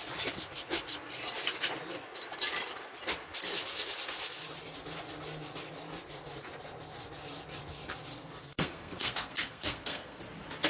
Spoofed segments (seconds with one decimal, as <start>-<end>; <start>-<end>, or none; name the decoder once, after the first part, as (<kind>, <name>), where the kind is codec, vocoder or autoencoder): 8.1-10.2 (codec, SNAC)